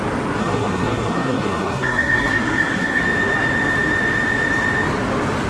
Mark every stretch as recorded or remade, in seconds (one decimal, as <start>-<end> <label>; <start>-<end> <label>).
0.0-0.4 recorded; 0.4-3.0 remade; 3.0-5.5 recorded